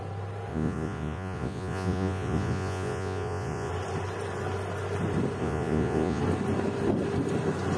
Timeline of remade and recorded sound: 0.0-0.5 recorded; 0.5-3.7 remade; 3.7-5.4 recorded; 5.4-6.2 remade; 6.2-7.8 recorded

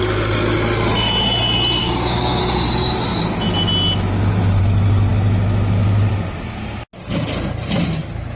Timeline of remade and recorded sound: 0.0-1.8 recorded; 1.8-2.4 remade; 2.4-8.4 recorded

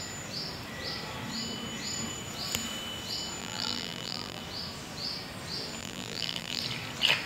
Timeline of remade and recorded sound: 0.0-3.4 recorded; 3.4-4.4 remade; 4.4-5.8 recorded; 5.8-6.6 remade; 6.6-7.3 recorded

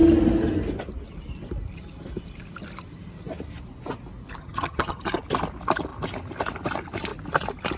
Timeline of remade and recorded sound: 0.0-4.4 recorded; 4.4-5.0 remade; 5.0-7.8 recorded

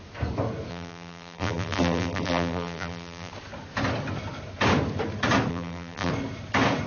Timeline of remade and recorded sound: 0.0-0.7 recorded; 0.7-3.3 remade; 3.3-5.5 recorded; 5.5-6.1 remade; 6.1-6.9 recorded

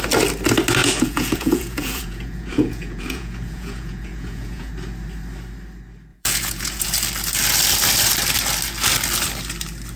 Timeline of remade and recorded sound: 0.0-0.8 recorded; 0.8-4.7 remade; 4.7-6.1 recorded; 6.1-6.9 remade; 6.9-10.0 recorded

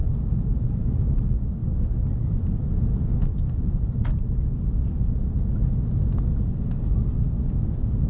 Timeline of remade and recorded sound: 0.0-1.1 remade; 1.1-8.1 recorded

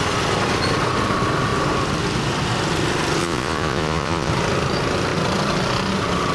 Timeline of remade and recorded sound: 0.0-3.2 recorded; 3.2-4.3 remade; 4.3-6.3 recorded